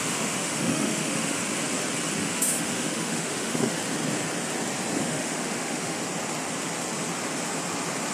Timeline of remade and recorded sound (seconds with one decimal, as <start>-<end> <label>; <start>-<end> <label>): 0.0-1.4 remade; 1.4-2.2 recorded; 2.2-3.8 remade; 3.8-5.0 recorded; 5.0-6.0 remade; 6.0-8.1 recorded